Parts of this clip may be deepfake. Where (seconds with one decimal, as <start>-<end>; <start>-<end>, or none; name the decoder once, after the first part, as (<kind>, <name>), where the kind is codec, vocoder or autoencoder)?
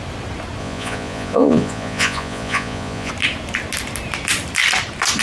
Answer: 0.6-3.1 (vocoder, Vocos)